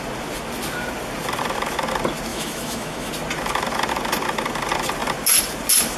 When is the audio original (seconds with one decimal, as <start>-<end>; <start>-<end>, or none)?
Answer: 0.0-2.3; 3.1-6.0